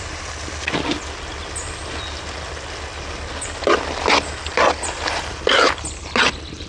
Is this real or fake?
real